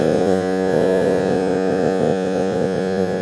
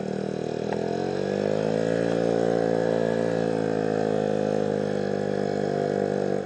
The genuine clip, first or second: second